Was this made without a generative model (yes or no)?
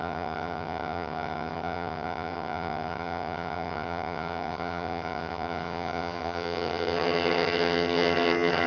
no